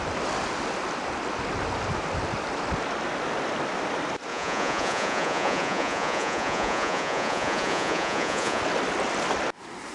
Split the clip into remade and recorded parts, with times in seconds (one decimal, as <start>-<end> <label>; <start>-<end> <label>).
0.0-4.3 recorded; 4.3-8.6 remade; 8.6-9.9 recorded